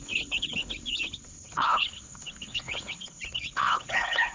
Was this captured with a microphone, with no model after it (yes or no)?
no